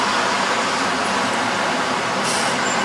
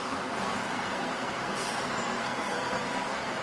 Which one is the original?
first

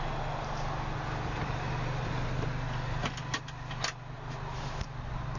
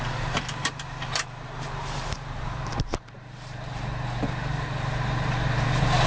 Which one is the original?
first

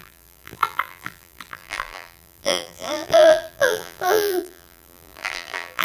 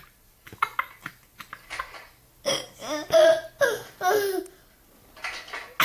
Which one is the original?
second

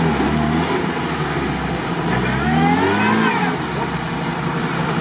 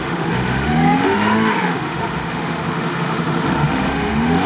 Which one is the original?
first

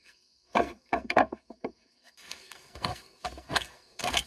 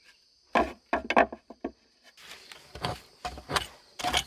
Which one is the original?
second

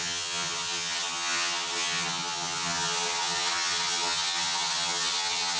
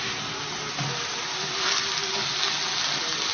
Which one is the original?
second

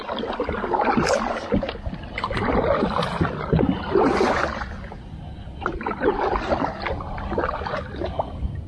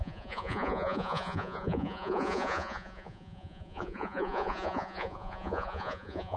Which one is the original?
first